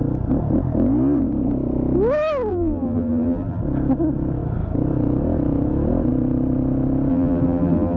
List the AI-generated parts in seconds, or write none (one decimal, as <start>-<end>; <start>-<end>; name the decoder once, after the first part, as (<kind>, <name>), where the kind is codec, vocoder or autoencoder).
2.5-3.6 (vocoder, BigVGAN v2); 7.1-8.0